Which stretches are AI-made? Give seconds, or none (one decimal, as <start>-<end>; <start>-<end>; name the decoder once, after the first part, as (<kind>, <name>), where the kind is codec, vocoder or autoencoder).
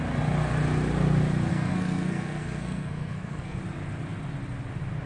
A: 1.5-3.6 (codec, SNAC)